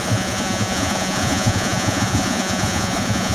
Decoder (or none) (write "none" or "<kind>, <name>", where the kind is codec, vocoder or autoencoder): vocoder, Vocos